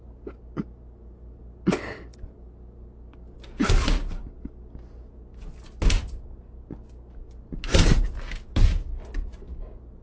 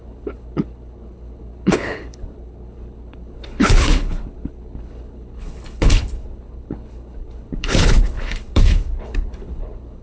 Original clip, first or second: first